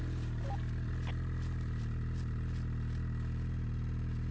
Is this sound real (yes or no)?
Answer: yes